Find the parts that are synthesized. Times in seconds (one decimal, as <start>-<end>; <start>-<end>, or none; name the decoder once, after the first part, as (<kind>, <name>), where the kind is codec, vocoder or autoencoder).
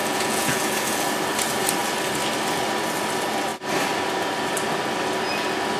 0.0-1.1 (vocoder, Vocos)